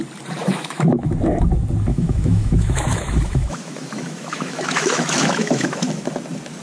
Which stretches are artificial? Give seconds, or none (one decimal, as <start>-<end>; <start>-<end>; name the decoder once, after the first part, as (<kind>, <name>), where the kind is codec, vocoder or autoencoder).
0.4-1.1 (autoencoder, DAC-VAE); 1.9-5.9